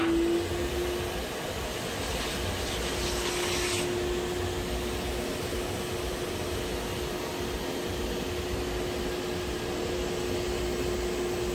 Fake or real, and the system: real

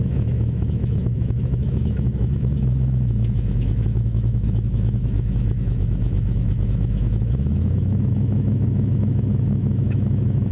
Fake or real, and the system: fake, autoencoder, DAC-VAE